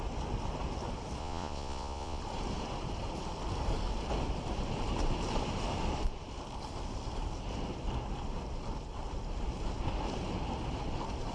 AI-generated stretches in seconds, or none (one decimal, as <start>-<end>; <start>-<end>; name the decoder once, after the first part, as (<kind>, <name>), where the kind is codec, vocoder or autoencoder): 1.2-2.2 (vocoder, Vocos)